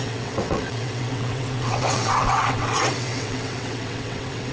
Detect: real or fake fake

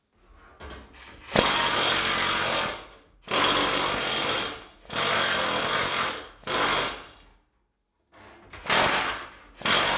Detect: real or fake real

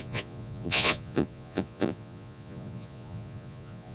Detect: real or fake fake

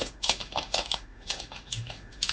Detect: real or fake fake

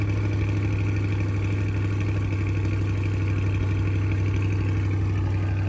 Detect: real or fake real